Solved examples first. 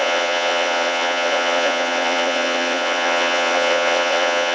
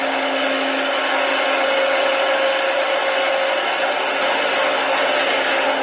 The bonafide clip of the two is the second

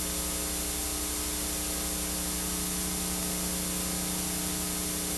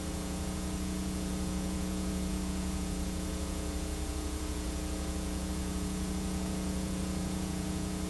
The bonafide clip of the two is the first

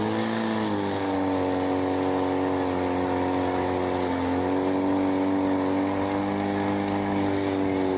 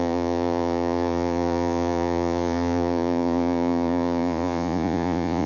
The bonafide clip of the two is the first